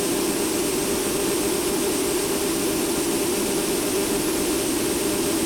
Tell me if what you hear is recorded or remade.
recorded